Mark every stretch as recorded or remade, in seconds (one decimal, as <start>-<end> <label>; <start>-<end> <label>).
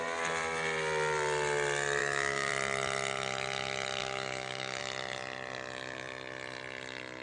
0.0-2.0 recorded; 2.0-2.5 remade; 2.5-4.0 recorded; 4.0-4.8 remade; 4.8-7.2 recorded